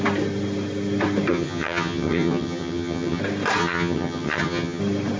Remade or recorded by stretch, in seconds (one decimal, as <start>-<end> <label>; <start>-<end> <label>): 0.0-1.3 recorded; 1.3-3.2 remade; 3.2-3.6 recorded; 3.6-4.8 remade; 4.8-5.2 recorded